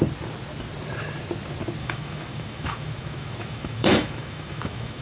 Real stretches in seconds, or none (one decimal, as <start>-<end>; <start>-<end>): 0.0-1.8